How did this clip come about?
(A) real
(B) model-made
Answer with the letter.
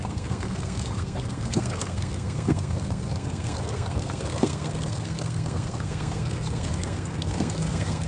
B